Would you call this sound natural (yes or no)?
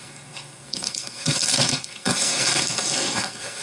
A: no